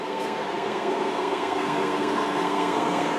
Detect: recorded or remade remade